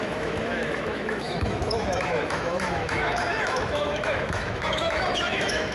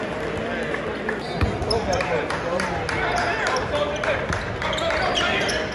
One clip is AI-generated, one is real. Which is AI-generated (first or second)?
first